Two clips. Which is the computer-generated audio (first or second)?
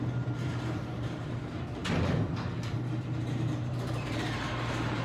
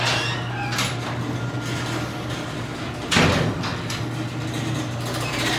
first